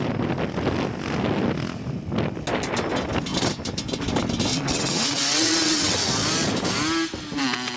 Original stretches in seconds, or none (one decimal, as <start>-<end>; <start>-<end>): 0.0-4.5; 6.1-7.8